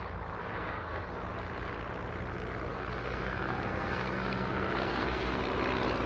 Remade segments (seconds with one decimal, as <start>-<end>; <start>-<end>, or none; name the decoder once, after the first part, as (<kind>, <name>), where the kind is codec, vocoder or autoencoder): 0.4-1.1 (codec, SNAC); 2.7-5.4